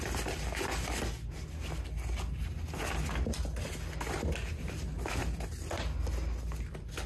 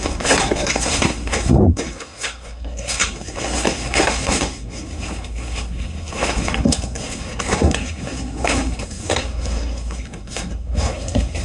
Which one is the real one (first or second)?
first